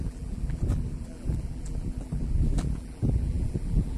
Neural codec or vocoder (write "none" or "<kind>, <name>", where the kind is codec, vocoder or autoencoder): vocoder, BigVGAN v2